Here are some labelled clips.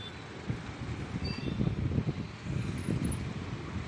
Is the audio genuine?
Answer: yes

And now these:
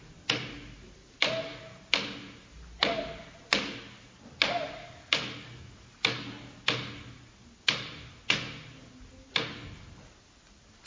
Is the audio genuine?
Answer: yes